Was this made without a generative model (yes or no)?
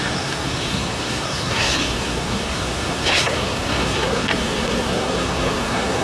no